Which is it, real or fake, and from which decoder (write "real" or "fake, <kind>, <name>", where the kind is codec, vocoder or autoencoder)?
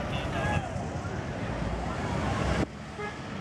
real